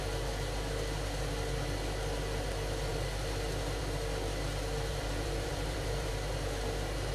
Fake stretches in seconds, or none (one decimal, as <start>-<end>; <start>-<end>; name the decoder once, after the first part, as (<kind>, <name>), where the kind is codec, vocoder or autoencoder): 4.9-6.1 (vocoder, BigVGAN v2)